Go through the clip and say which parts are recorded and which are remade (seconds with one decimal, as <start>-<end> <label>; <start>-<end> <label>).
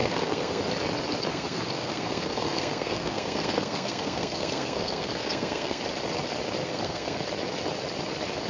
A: 0.0-0.6 remade; 0.6-1.3 recorded; 1.3-5.8 remade; 5.8-6.6 recorded; 6.6-7.2 remade; 7.2-8.5 recorded